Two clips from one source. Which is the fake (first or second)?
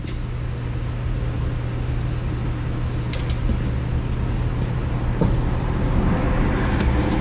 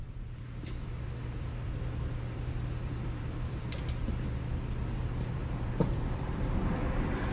second